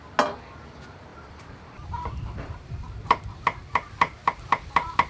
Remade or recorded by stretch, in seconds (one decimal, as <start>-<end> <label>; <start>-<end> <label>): 0.0-1.1 recorded; 1.1-2.7 remade; 2.7-5.1 recorded